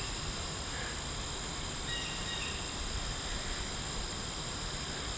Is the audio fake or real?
real